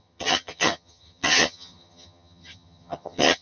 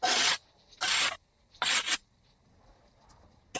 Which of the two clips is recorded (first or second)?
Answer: second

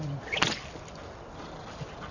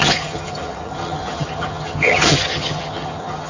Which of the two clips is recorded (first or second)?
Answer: first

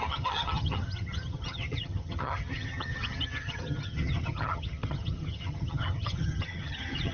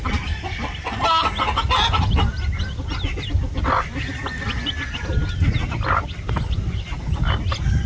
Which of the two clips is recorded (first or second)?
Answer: second